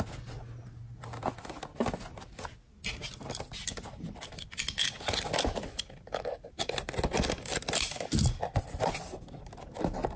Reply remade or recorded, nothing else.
recorded